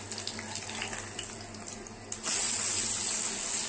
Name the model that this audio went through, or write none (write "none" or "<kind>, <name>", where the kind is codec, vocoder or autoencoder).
none